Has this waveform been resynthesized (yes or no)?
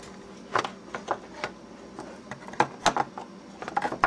no